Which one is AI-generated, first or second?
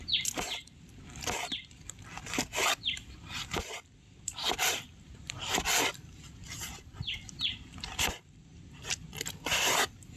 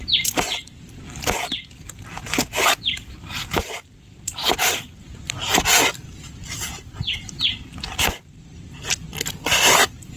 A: first